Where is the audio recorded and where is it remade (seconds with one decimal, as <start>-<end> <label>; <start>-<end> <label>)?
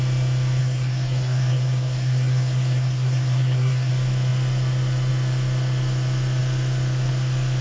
0.0-0.6 recorded; 0.6-3.9 remade; 3.9-7.6 recorded